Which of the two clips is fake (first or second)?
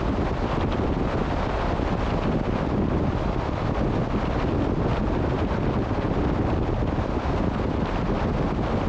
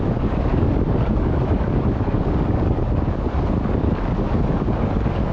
second